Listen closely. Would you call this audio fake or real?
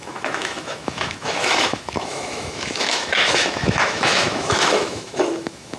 fake